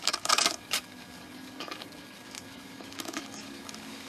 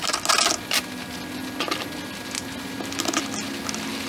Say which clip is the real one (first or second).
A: second